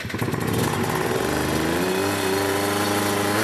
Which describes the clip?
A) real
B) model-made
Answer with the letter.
A